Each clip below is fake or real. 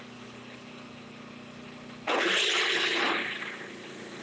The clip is real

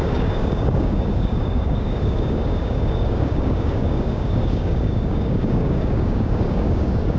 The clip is fake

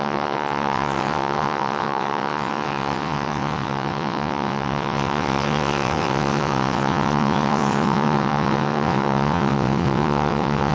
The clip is fake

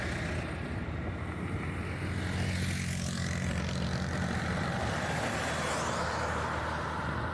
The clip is real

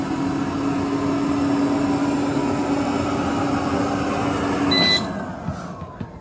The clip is real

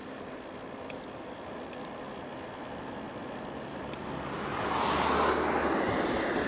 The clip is real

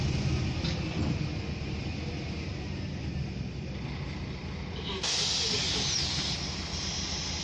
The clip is real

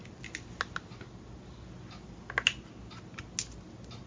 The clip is real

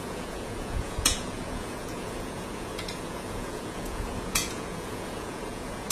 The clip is fake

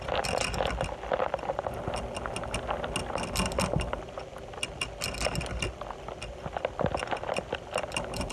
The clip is real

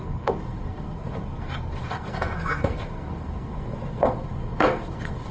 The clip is fake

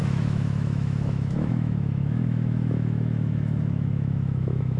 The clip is fake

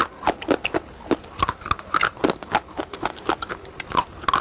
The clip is real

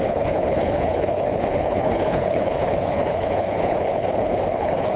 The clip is fake